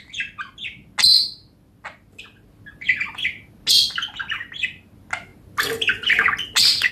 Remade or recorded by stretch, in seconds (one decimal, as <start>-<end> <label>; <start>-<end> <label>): 0.0-6.9 recorded